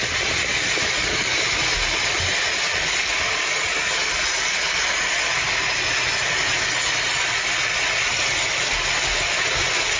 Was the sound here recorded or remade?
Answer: recorded